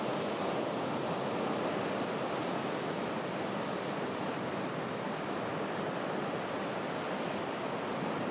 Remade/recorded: recorded